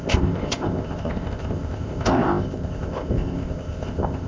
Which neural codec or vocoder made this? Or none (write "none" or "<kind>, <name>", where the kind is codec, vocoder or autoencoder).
codec, ZipCodec